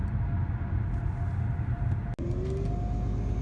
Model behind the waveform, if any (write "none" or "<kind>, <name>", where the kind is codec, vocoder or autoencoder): none